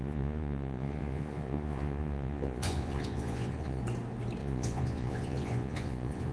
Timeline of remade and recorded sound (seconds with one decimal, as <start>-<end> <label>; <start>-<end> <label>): 0.0-3.8 remade; 3.8-4.4 recorded; 4.4-6.3 remade